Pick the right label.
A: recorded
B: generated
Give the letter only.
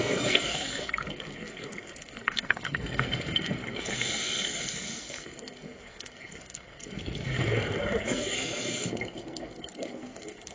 B